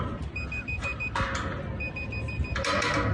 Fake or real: real